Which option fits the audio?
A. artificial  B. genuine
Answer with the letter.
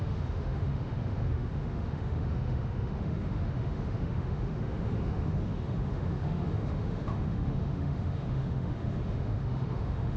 A